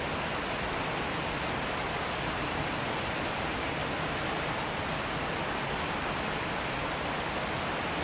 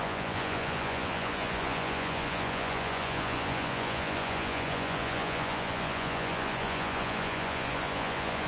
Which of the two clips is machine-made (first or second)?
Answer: second